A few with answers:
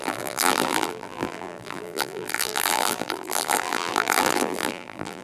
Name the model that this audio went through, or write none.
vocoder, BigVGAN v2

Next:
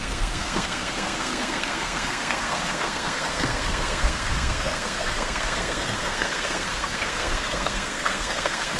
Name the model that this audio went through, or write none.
codec, SNAC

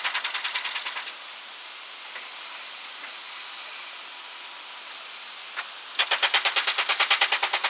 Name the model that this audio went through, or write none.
none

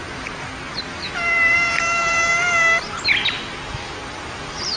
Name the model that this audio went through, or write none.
none